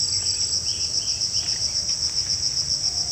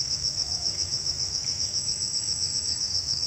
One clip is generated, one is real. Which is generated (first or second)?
second